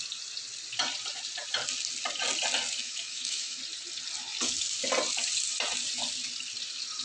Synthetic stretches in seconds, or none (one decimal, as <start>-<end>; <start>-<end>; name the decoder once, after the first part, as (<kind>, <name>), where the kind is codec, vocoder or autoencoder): 2.8-3.6 (autoencoder, DAC-VAE)